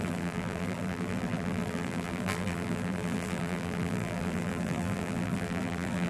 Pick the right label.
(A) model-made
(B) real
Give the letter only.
A